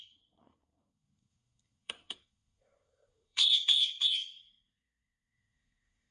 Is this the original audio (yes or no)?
no